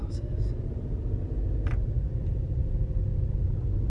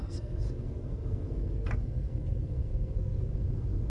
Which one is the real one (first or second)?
first